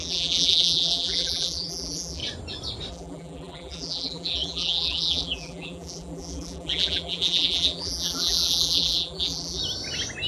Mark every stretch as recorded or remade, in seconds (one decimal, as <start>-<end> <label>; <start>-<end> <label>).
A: 0.0-2.2 remade; 2.2-2.9 recorded; 2.9-9.6 remade; 9.6-10.3 recorded